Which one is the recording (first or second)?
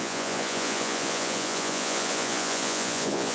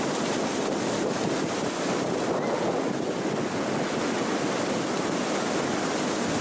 second